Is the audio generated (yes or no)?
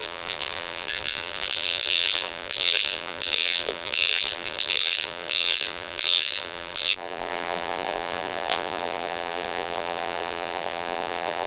yes